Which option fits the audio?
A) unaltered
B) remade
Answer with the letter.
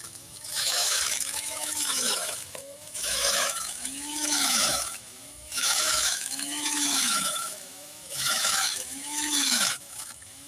B